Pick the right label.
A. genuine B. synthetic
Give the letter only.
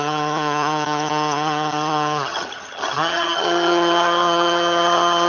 B